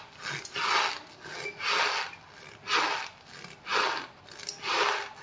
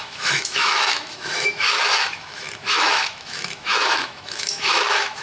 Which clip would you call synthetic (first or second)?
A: second